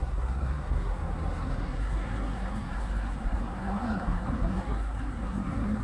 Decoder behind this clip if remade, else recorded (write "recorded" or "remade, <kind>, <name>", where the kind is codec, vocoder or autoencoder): remade, codec, SNAC